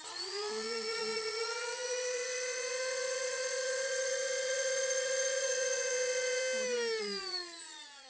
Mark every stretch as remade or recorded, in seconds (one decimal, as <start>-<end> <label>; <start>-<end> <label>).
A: 0.0-6.4 remade; 6.4-7.0 recorded; 7.0-8.1 remade